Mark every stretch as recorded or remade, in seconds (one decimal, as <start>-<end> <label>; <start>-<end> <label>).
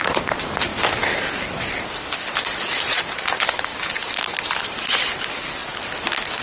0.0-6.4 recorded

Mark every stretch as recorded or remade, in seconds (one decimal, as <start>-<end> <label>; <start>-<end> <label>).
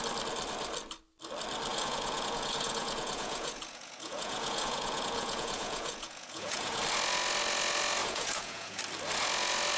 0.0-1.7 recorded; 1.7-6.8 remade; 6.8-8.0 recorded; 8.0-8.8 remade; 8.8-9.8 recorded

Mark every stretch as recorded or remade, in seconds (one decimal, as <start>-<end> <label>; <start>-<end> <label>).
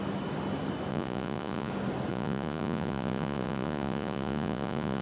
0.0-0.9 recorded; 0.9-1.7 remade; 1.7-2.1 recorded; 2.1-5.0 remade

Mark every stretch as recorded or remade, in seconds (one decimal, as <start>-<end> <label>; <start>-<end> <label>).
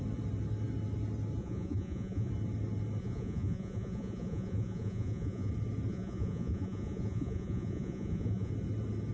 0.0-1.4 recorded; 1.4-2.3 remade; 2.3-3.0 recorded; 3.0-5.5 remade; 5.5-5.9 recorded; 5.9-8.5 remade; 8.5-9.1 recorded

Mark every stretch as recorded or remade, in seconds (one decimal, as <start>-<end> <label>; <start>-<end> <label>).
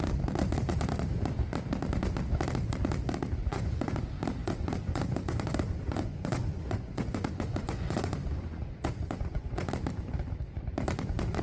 0.0-3.4 recorded; 3.4-4.0 remade; 4.0-4.4 recorded; 4.4-9.7 remade; 9.7-11.4 recorded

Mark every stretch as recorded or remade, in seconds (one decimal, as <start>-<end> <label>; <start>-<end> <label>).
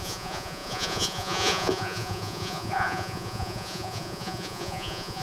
0.0-5.2 remade